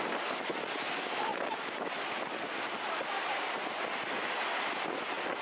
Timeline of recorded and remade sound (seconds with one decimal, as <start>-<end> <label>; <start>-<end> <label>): 0.0-5.4 recorded